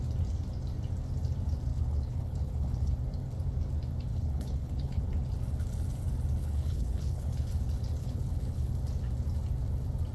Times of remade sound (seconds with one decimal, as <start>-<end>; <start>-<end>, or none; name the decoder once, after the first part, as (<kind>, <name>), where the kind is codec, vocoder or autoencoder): 1.7-2.9 (codec, HILCodec); 4.1-5.0; 6.4-7.5; 8.0-8.7